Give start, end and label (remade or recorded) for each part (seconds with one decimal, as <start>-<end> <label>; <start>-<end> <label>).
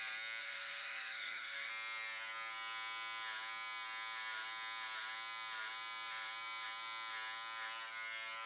0.0-0.4 recorded; 0.4-1.7 remade; 1.7-8.5 recorded